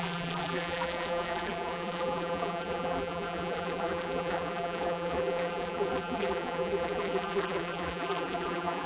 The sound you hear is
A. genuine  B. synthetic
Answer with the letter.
B